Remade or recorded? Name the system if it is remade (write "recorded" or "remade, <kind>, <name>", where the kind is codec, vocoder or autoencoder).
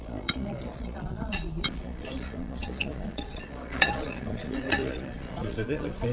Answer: remade, vocoder, Vocos